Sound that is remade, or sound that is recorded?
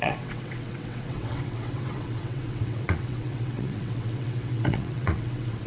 remade